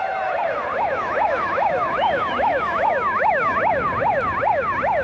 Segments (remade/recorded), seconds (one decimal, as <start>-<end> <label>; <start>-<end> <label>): 0.0-0.7 recorded; 0.7-3.7 remade; 3.7-5.0 recorded